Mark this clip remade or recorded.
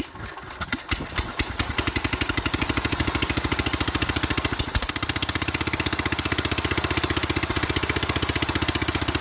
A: recorded